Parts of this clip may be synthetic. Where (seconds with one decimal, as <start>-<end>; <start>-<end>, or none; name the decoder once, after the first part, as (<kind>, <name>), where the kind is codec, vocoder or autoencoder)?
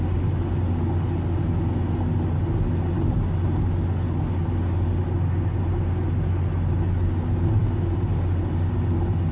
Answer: none